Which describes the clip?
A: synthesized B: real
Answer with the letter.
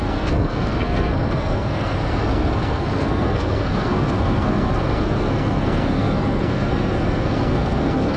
A